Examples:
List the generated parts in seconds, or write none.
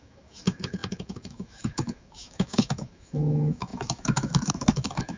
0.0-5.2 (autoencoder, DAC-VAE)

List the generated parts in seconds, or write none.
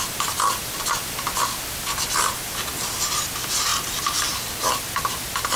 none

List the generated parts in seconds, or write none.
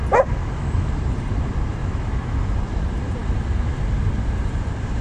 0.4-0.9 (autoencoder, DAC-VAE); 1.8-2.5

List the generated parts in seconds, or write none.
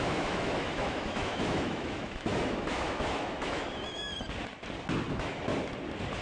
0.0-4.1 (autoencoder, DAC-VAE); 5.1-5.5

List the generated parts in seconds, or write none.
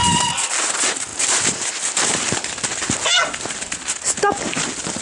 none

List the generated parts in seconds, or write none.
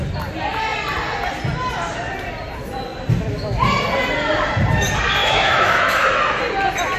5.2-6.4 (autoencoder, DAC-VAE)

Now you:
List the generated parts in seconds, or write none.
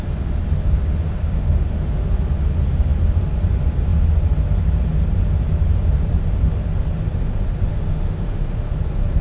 1.2-1.7 (autoencoder, DAC-VAE); 7.7-8.7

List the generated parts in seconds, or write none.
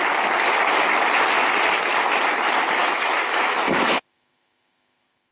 2.8-5.3 (autoencoder, DAC-VAE)